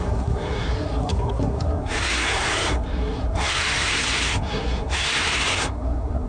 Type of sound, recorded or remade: remade